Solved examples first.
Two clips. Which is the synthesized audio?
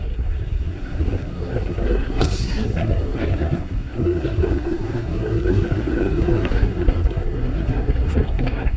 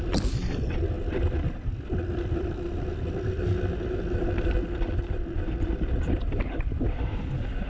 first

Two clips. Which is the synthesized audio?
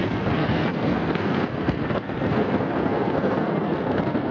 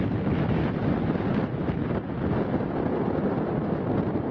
first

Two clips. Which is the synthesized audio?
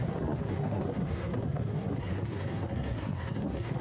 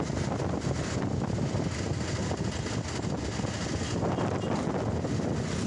first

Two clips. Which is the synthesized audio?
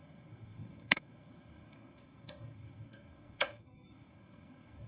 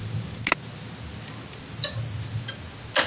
first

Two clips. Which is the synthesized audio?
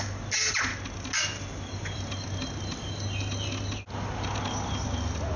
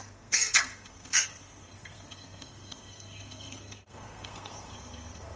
second